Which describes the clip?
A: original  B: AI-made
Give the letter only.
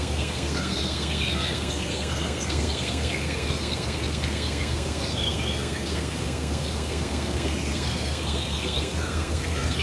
B